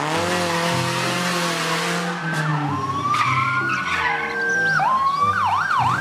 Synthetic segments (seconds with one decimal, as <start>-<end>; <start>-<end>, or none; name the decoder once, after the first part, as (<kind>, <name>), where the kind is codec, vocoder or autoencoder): none